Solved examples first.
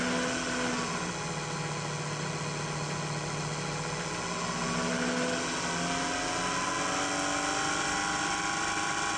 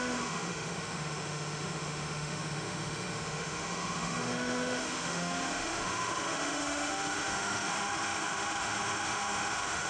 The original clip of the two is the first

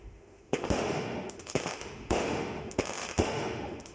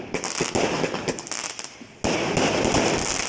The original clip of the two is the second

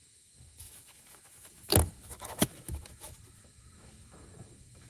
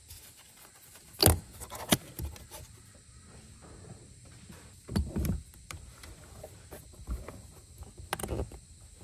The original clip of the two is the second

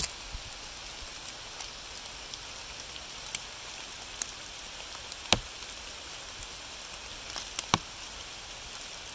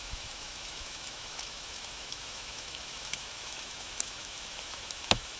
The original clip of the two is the first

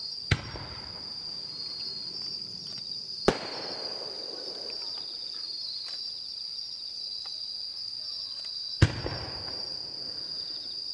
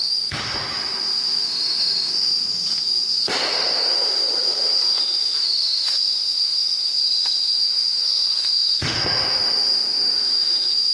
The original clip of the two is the first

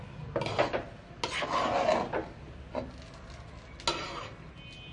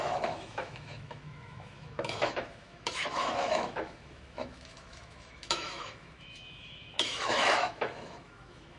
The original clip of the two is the first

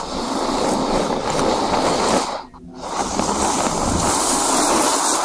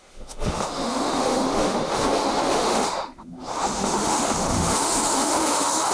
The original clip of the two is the first